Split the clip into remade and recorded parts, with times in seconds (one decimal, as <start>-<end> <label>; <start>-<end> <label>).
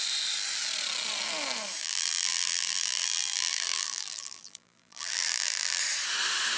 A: 0.0-1.8 recorded; 1.8-5.8 remade; 5.8-6.6 recorded